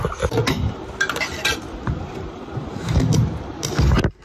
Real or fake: real